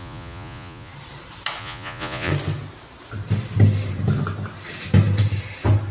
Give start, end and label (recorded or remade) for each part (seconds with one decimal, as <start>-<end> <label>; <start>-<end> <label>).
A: 0.0-0.9 remade; 0.9-1.6 recorded; 1.6-2.3 remade; 2.3-5.9 recorded